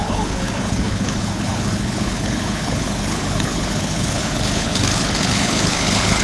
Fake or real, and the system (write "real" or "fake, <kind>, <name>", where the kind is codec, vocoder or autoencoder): fake, codec, HILCodec